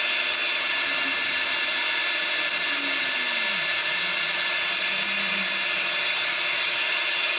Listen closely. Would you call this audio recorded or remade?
recorded